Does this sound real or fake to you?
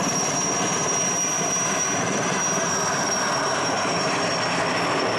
real